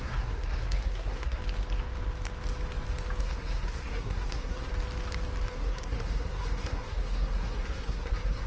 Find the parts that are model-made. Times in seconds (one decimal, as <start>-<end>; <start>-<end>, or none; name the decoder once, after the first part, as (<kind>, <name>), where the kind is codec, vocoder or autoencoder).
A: 0.0-1.4 (codec, SNAC); 3.2-4.7; 5.5-8.5